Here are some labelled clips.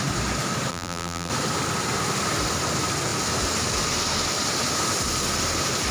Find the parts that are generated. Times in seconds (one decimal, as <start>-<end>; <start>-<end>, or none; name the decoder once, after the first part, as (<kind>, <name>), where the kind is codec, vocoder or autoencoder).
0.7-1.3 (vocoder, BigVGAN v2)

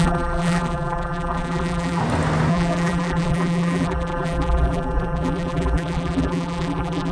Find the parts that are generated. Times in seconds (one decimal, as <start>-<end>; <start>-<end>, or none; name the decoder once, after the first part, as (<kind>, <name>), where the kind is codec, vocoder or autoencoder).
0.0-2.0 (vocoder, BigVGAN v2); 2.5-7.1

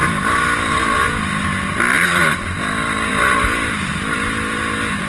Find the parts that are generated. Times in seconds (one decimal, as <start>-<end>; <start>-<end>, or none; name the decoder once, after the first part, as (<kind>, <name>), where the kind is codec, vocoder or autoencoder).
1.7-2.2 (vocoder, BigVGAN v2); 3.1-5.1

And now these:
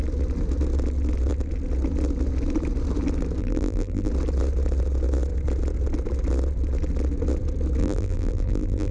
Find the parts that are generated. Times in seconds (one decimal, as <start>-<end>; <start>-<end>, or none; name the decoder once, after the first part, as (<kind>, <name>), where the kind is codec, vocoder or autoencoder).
3.4-4.1 (vocoder, BigVGAN v2); 7.8-8.9

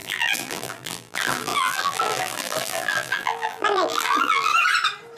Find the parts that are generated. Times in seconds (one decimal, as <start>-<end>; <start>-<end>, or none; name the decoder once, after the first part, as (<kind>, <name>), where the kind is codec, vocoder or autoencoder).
0.0-4.5 (vocoder, BigVGAN v2)

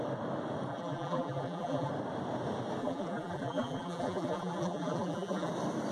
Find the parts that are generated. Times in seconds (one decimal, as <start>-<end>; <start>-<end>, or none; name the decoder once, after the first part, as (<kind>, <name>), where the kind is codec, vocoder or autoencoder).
0.7-1.9 (vocoder, BigVGAN v2); 2.8-5.5